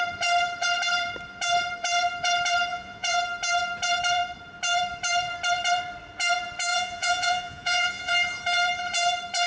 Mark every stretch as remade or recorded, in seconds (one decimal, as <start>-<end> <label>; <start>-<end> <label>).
0.0-2.7 recorded; 2.7-3.2 remade; 3.2-6.7 recorded; 6.7-8.1 remade; 8.1-9.5 recorded